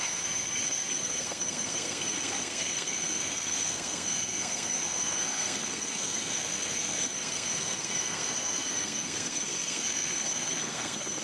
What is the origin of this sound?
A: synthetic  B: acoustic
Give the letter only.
A